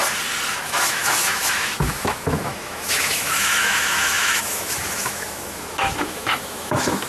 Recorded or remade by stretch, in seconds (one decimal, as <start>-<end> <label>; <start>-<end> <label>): 0.0-0.6 recorded; 0.6-7.1 remade